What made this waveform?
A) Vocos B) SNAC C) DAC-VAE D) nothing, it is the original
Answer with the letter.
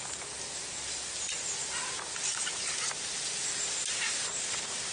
D